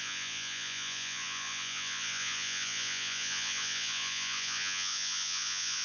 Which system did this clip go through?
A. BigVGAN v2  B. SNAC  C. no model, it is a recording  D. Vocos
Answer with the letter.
D